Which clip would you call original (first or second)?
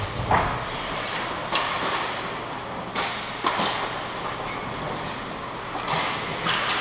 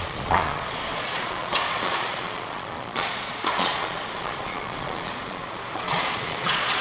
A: first